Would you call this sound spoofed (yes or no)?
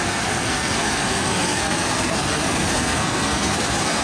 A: yes